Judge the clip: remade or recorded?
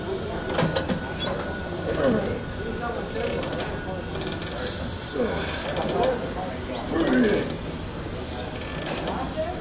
recorded